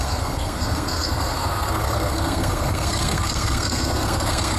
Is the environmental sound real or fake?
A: fake